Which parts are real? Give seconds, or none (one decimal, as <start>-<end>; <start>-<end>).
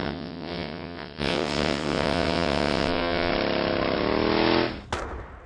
3.3-5.5